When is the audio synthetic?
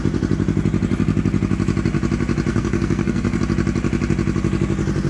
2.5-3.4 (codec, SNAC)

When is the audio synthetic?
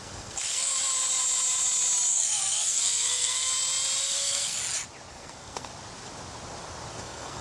0.0-0.7 (codec, SNAC); 2.1-3.5; 4.0-4.6; 5.1-5.7; 6.9-7.4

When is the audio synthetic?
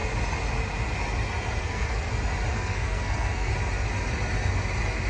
1.6-2.1 (codec, SNAC); 2.5-3.5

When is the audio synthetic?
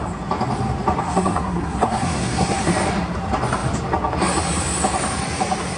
1.0-2.7 (codec, SNAC)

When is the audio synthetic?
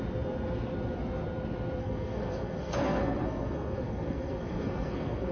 1.8-5.3 (codec, SNAC)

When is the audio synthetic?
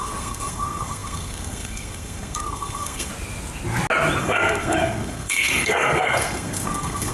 0.0-3.1 (codec, SNAC); 4.2-7.1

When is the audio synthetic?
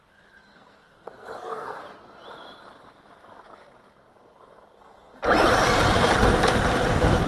0.5-1.8 (codec, SNAC)